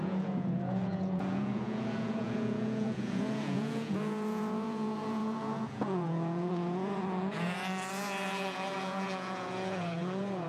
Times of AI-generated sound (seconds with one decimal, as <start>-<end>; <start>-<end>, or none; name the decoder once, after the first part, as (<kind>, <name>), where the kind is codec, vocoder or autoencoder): 0.0-10.5 (vocoder, Vocos)